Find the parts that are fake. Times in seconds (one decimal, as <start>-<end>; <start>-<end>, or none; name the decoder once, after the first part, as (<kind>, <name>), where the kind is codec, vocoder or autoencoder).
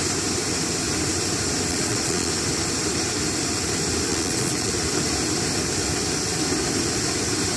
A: 1.7-2.3 (vocoder, Vocos); 4.1-4.7